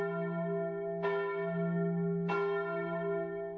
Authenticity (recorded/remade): recorded